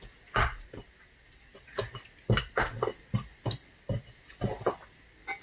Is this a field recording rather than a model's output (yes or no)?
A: yes